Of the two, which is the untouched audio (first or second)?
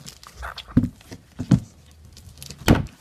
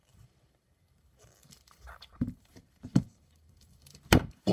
first